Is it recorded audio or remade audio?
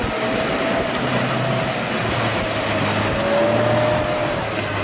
recorded